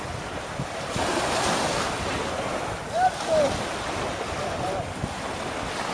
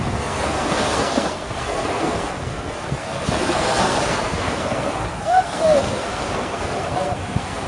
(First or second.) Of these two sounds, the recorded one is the first